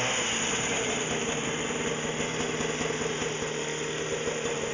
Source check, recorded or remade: recorded